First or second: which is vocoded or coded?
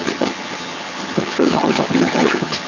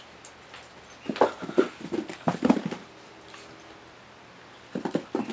first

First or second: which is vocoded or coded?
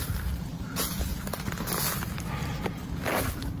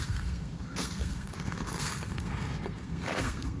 second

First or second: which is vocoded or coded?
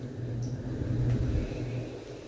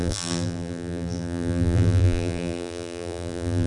second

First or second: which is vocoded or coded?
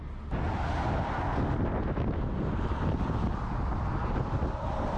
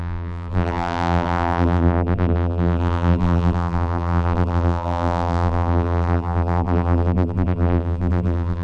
second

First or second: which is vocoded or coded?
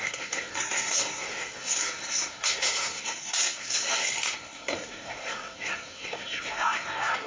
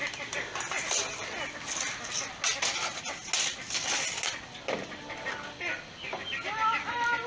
first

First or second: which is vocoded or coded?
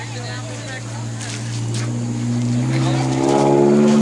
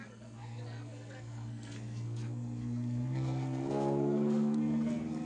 second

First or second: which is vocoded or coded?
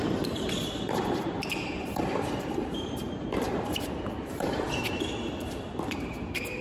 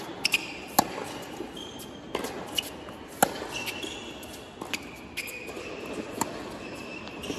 first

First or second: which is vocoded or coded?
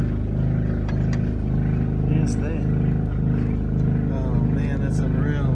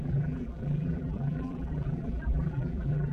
second